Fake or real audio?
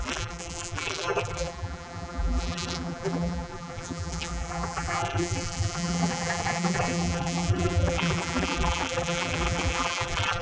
fake